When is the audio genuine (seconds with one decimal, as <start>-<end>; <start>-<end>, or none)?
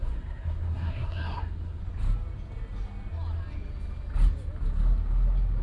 1.8-5.6